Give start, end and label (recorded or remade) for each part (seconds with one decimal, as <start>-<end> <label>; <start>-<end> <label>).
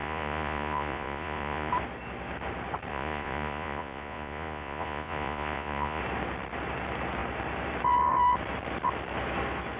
0.0-1.7 remade; 1.7-2.9 recorded; 2.9-6.0 remade; 6.0-9.8 recorded